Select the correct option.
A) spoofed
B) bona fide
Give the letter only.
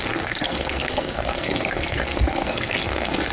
A